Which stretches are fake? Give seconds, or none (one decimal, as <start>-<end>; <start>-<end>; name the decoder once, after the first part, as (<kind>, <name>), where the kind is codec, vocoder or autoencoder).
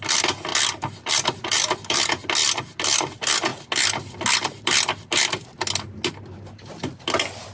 none